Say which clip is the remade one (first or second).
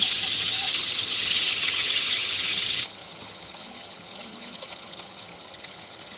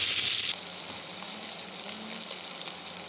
first